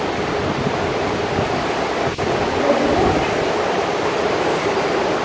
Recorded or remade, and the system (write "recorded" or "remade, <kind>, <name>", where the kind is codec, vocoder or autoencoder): recorded